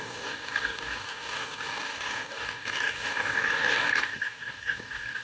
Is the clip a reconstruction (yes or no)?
yes